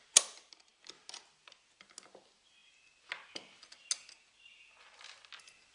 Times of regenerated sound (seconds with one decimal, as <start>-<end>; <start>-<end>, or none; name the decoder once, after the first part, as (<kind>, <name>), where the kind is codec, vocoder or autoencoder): none